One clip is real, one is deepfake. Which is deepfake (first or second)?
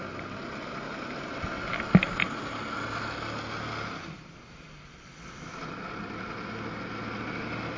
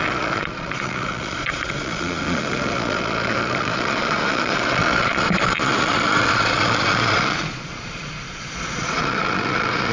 second